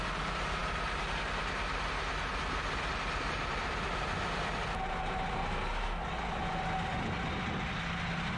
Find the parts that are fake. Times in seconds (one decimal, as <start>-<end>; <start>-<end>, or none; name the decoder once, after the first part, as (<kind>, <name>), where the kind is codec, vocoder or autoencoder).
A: none